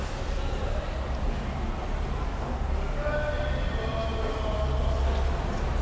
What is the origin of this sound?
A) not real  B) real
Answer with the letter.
B